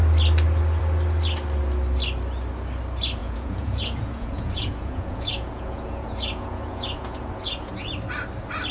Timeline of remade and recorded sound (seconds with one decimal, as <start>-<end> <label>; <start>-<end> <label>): 0.0-3.2 recorded; 3.2-7.9 remade; 7.9-8.7 recorded

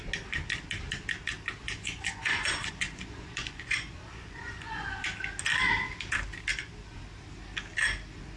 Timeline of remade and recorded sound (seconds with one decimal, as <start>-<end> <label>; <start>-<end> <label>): 0.0-1.6 recorded; 1.6-5.0 remade; 5.0-6.5 recorded; 6.5-7.0 remade; 7.0-8.4 recorded

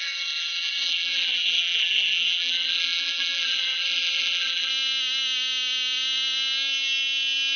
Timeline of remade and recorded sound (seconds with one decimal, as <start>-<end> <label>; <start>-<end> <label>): 0.0-4.7 remade; 4.7-7.6 recorded